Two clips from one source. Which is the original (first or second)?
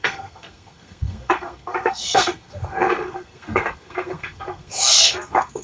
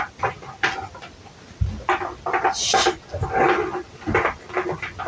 second